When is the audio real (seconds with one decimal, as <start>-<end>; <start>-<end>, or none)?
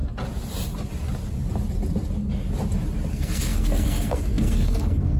0.0-3.1